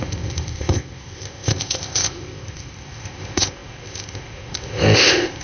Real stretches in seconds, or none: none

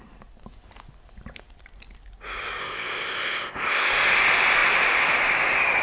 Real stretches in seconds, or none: 0.0-2.6; 3.9-5.8

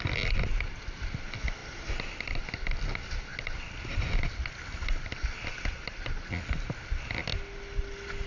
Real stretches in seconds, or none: 0.0-8.3

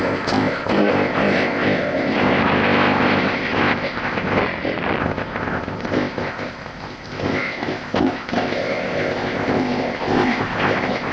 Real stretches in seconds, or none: 4.4-5.0

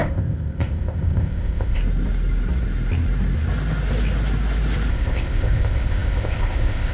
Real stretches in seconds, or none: 1.8-4.9